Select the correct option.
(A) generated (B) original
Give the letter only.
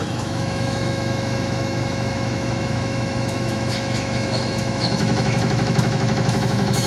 A